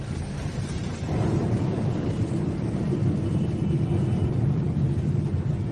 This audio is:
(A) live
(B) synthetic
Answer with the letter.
B